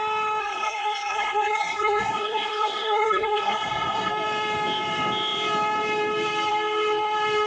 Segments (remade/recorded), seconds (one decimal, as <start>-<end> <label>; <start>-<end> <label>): 0.0-0.4 recorded; 0.4-4.1 remade; 4.1-7.5 recorded